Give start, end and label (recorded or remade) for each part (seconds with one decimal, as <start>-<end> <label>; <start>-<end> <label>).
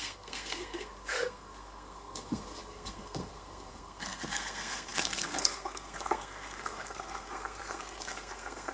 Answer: 0.0-8.7 remade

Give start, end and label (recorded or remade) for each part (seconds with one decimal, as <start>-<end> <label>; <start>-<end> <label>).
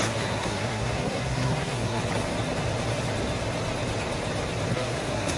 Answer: 0.0-2.0 remade; 2.0-4.7 recorded; 4.7-5.4 remade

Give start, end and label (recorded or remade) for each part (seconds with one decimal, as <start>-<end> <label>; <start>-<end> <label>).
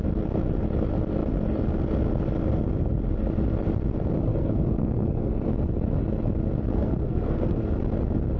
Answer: 0.0-4.3 recorded; 4.3-5.3 remade; 5.3-6.7 recorded; 6.7-7.6 remade; 7.6-8.4 recorded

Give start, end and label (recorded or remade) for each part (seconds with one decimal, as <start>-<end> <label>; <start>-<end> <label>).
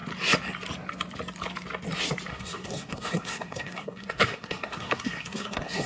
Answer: 0.0-2.3 recorded; 2.3-5.9 remade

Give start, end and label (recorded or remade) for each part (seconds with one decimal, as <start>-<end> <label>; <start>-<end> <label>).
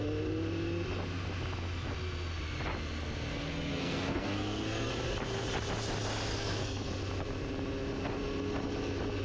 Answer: 0.0-3.5 recorded; 3.5-4.9 remade; 4.9-6.3 recorded; 6.3-6.9 remade; 6.9-9.2 recorded